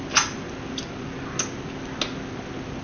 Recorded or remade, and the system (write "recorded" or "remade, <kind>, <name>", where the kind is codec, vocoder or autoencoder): recorded